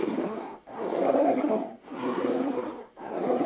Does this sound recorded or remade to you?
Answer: remade